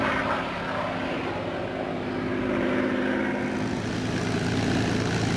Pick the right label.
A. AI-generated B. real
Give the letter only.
B